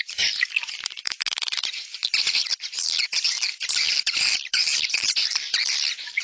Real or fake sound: fake